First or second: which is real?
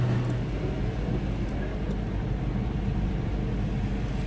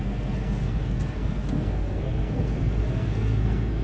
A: first